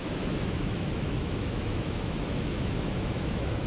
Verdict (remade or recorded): remade